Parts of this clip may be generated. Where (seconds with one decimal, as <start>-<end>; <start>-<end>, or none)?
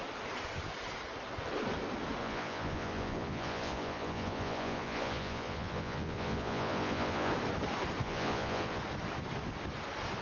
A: 2.2-7.3; 8.0-8.8